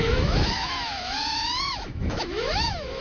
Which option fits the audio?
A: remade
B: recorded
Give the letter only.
A